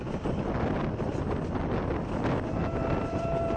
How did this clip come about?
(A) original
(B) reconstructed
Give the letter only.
A